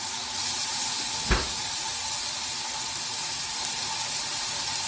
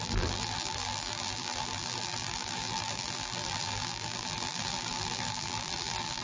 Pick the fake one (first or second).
second